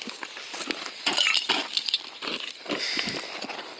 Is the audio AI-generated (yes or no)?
no